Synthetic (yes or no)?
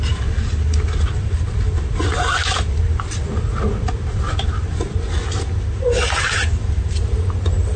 no